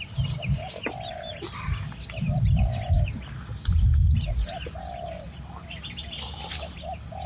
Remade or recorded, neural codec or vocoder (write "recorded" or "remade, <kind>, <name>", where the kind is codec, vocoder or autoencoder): recorded